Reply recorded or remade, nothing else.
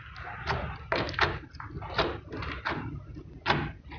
recorded